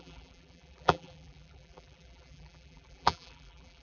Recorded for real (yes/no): no